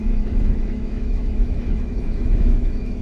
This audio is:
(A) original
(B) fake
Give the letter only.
B